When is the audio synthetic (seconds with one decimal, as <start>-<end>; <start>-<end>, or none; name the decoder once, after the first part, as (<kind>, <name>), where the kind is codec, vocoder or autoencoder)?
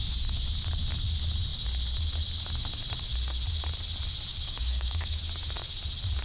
4.3-5.2 (codec, DAC)